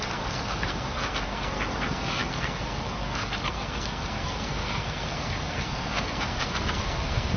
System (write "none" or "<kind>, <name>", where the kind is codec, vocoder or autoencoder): codec, SNAC